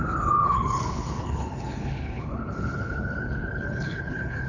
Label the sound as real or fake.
fake